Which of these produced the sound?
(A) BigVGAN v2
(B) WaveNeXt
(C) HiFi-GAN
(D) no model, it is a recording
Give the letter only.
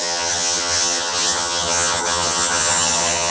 C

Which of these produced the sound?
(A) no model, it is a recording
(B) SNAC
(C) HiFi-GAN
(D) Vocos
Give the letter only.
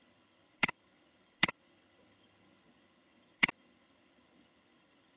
C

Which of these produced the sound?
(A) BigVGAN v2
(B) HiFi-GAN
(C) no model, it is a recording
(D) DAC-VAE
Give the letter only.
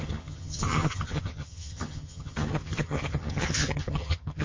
B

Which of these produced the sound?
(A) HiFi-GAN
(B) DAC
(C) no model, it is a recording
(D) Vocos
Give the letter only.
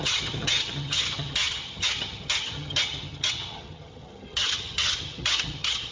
A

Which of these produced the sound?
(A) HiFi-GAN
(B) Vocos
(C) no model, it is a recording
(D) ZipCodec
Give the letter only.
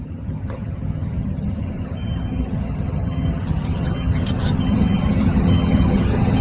A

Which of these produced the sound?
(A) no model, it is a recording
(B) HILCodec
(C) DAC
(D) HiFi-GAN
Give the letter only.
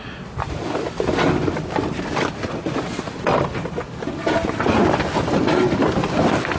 A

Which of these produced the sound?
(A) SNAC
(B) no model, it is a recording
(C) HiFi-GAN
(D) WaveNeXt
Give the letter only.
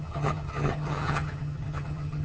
C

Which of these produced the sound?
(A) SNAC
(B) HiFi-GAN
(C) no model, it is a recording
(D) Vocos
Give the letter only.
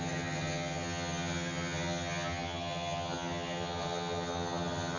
B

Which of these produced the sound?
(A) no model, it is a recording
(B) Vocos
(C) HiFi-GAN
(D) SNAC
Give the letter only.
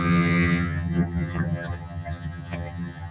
C